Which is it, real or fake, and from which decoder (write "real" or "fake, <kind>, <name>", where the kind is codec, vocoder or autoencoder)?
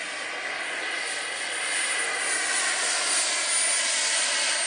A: real